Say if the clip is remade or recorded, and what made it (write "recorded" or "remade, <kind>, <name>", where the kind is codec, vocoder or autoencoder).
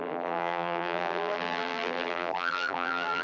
remade, vocoder, BigVGAN v2